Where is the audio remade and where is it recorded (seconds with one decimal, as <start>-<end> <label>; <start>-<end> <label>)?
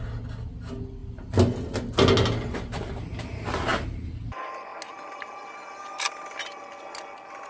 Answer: 0.0-7.5 recorded